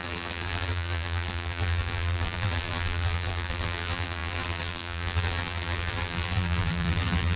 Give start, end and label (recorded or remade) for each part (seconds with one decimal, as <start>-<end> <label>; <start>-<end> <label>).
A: 0.0-7.4 remade